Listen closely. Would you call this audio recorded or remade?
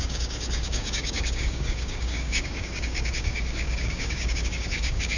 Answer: remade